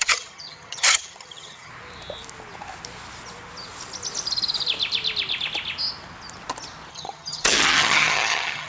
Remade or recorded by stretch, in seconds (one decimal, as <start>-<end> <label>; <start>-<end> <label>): 0.0-1.7 remade; 1.7-6.9 recorded; 6.9-8.7 remade